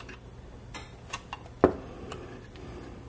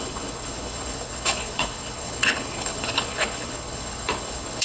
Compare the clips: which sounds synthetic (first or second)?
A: second